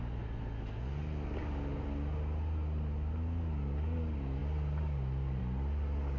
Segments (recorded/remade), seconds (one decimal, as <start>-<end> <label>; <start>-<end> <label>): 0.0-6.2 recorded